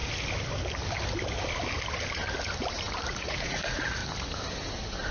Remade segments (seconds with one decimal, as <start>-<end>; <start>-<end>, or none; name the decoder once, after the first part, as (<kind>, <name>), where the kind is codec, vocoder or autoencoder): 3.1-4.0 (vocoder, Vocos)